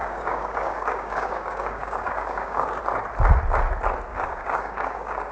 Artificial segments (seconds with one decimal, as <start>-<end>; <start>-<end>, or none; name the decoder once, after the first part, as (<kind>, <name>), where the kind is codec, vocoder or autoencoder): 0.0-2.8 (codec, DAC); 4.1-5.3